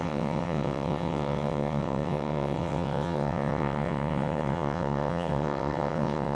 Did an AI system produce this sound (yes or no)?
yes